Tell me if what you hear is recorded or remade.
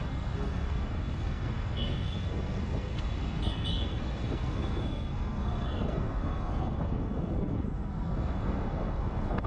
remade